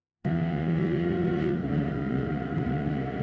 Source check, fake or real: fake